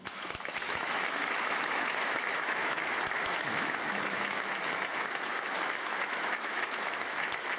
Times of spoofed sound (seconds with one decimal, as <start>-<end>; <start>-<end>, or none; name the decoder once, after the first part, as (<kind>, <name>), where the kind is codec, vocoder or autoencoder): 0.0-7.6 (autoencoder, DAC-VAE)